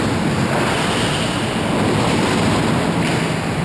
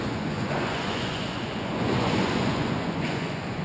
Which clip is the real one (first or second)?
first